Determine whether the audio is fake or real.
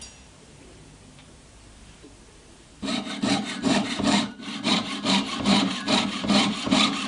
fake